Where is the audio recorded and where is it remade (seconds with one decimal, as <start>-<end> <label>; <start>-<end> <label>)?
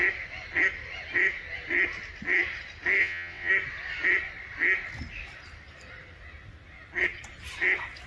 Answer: 0.0-3.0 recorded; 3.0-3.5 remade; 3.5-8.1 recorded